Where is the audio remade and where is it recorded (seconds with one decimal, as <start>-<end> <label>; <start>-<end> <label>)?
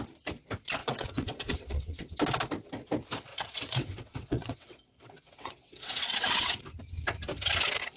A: 0.0-0.8 recorded; 0.8-2.1 remade; 2.1-3.3 recorded; 3.3-6.6 remade; 6.6-8.0 recorded